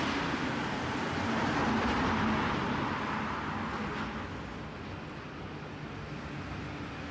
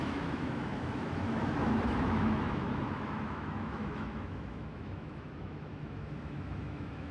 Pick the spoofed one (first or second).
second